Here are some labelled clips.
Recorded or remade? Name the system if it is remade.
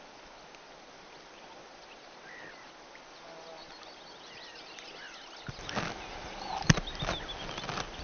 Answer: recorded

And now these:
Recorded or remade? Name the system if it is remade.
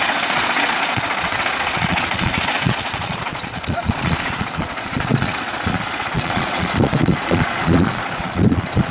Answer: remade, vocoder, Vocos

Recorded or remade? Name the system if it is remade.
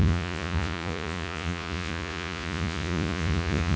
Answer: remade, vocoder, Vocos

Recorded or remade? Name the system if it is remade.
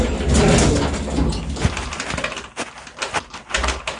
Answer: recorded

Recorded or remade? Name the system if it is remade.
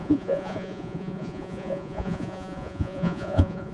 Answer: remade, vocoder, Vocos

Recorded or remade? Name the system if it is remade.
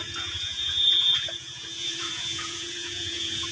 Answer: remade, vocoder, Vocos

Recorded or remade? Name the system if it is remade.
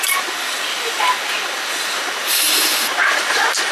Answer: recorded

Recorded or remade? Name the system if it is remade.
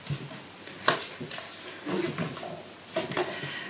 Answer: recorded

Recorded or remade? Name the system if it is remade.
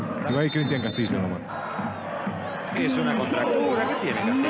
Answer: recorded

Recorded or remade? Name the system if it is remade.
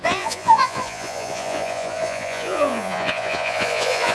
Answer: remade, vocoder, Vocos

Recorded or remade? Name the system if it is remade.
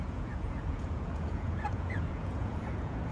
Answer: remade, vocoder, Vocos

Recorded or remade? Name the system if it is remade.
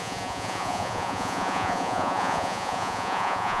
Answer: remade, vocoder, Vocos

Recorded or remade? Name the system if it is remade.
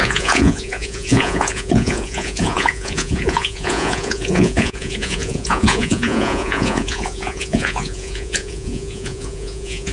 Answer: remade, vocoder, Vocos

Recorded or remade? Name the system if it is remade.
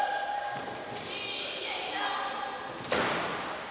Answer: recorded